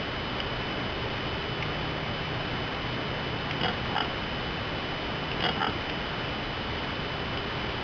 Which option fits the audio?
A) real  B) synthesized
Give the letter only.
A